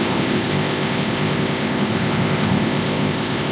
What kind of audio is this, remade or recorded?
remade